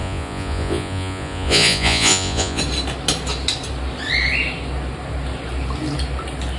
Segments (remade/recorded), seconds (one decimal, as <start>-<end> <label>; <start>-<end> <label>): 0.0-2.6 remade; 2.6-6.6 recorded

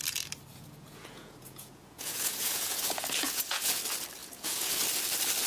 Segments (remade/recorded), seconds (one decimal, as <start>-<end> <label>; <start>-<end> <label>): 0.0-0.5 recorded; 0.5-3.8 remade; 3.8-4.2 recorded; 4.2-4.8 remade; 4.8-5.5 recorded

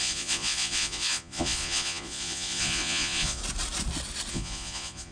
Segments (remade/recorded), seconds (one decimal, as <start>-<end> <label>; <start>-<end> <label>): 0.0-3.4 remade; 3.4-4.3 recorded; 4.3-5.1 remade

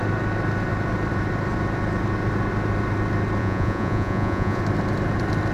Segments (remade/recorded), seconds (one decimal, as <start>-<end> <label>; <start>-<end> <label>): 0.0-3.4 recorded; 3.4-4.6 remade; 4.6-5.5 recorded

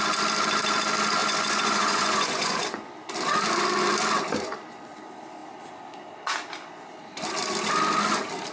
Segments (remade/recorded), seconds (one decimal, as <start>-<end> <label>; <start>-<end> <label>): 0.0-1.2 recorded; 1.2-2.9 remade; 2.9-8.5 recorded